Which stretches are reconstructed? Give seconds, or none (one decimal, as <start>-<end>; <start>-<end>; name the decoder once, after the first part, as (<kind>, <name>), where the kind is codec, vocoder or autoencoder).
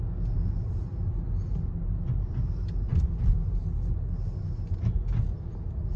none